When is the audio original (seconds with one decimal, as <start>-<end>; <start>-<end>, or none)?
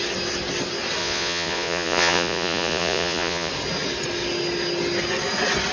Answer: 0.0-1.0; 3.5-5.7